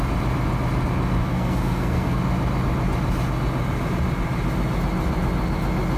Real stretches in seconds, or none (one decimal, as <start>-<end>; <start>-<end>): 0.0-1.2; 2.2-6.0